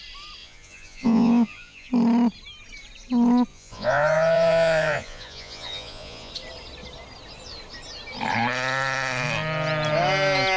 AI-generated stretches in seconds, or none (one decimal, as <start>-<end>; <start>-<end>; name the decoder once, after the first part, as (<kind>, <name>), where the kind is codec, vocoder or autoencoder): 0.4-1.9 (vocoder, Vocos); 3.5-6.3